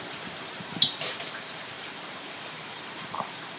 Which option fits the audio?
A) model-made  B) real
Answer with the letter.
A